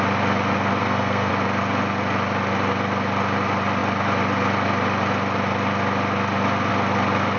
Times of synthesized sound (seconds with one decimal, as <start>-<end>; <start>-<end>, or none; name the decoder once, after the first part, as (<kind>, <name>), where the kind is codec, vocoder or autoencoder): 0.8-1.3 (codec, SNAC)